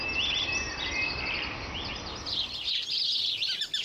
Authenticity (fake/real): real